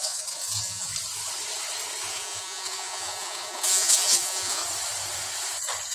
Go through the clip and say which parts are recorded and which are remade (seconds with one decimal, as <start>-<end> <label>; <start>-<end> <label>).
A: 0.0-0.9 remade; 0.9-2.1 recorded; 2.1-4.6 remade; 4.6-5.9 recorded